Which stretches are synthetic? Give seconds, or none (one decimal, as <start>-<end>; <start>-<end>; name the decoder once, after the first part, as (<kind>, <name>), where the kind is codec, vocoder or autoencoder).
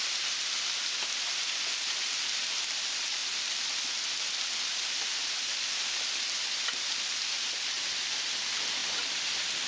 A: none